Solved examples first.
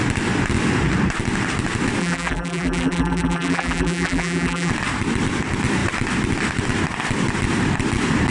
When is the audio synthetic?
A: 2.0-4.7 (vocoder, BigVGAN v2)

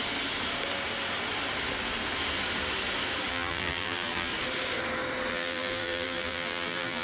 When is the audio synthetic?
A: 3.3-4.3 (vocoder, BigVGAN v2); 5.3-7.0

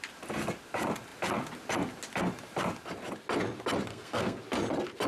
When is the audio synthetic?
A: 3.9-4.4 (codec, SNAC)

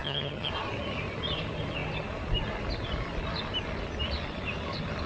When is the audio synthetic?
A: 0.0-0.5 (vocoder, HiFi-GAN)

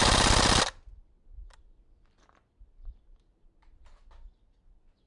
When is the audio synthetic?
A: none

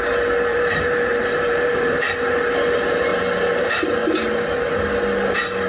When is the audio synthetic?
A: 0.5-2.0 (vocoder, BigVGAN v2)

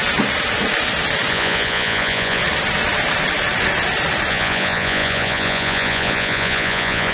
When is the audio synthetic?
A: 1.3-2.4 (vocoder, Vocos); 4.3-7.1

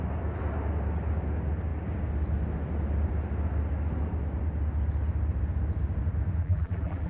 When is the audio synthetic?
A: 6.4-7.1 (vocoder, BigVGAN v2)